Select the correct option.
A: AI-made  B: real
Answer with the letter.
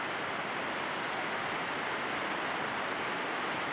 B